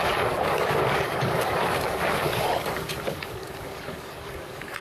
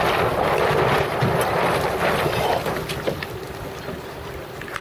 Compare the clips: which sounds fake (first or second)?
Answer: first